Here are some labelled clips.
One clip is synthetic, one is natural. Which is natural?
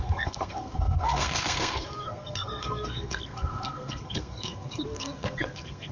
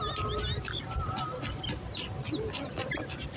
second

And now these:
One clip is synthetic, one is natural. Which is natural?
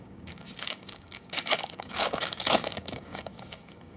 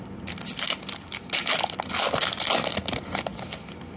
second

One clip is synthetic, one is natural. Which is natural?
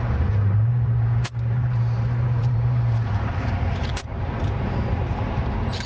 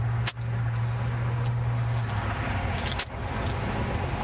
second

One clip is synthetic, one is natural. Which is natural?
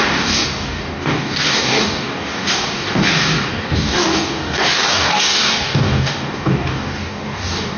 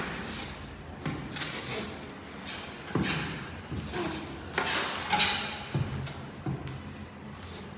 second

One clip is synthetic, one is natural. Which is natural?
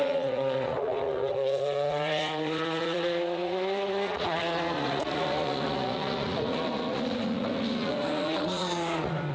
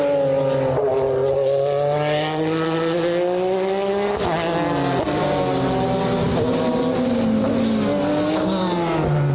second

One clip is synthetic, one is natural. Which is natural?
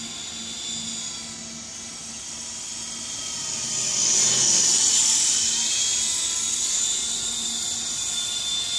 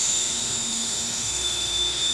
first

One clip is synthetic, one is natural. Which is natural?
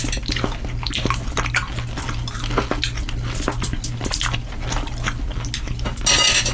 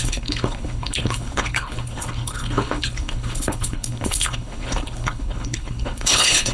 first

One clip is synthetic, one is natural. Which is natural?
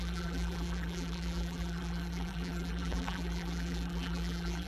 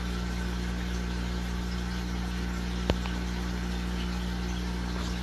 second